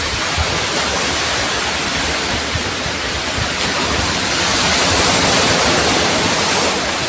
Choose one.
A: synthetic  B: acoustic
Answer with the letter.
A